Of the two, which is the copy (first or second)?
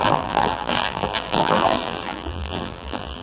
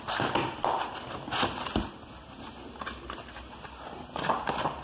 first